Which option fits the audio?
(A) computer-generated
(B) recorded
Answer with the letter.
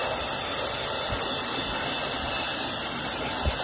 B